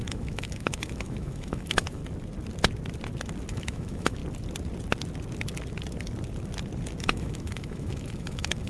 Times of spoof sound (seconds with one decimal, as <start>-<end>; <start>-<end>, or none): 0.0-2.0; 3.5-4.2; 7.0-8.7